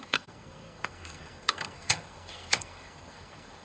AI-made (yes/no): yes